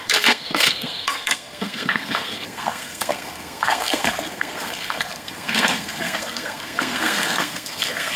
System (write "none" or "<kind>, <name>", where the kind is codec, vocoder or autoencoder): codec, SNAC